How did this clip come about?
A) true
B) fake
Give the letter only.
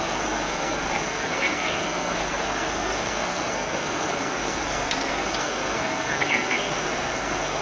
B